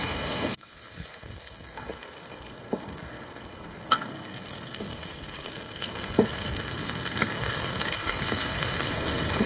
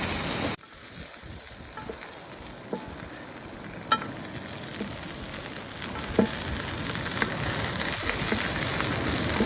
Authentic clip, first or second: second